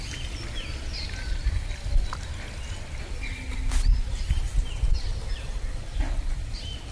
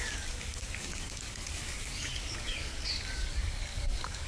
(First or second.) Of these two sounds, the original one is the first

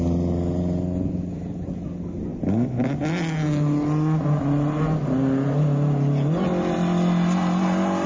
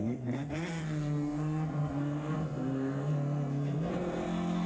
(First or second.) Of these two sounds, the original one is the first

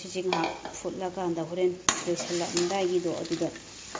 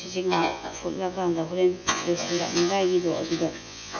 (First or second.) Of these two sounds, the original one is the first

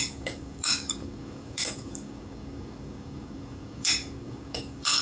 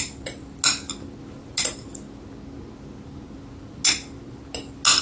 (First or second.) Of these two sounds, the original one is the second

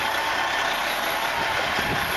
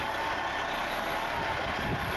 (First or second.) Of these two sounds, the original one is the second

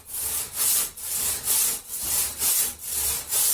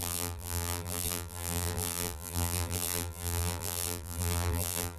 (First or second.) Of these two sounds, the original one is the first